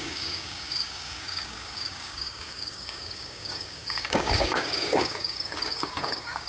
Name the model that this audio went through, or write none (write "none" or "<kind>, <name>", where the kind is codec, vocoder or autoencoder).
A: codec, DAC